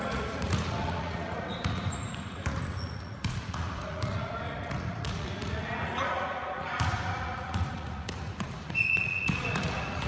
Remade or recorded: remade